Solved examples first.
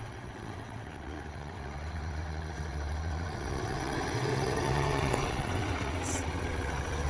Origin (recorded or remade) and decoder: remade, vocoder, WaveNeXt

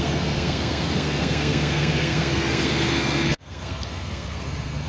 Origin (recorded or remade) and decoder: remade, codec, SNAC